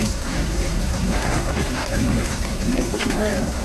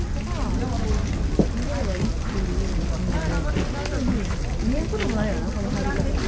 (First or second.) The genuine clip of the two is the second